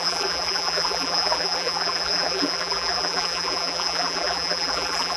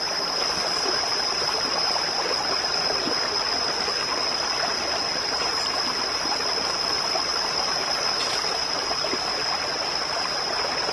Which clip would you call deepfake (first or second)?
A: first